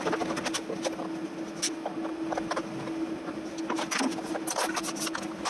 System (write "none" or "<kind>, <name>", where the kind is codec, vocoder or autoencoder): none